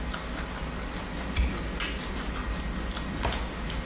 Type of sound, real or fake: real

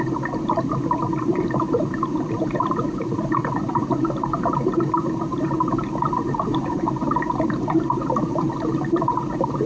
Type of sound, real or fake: fake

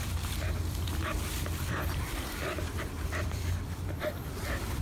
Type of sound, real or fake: fake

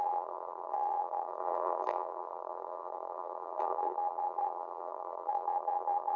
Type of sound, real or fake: fake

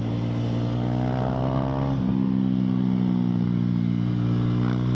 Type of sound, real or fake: real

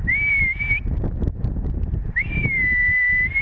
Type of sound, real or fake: fake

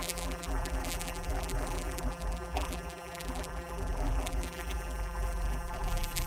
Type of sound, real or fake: fake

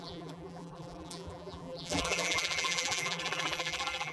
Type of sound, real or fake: fake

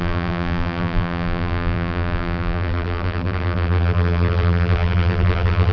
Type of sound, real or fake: fake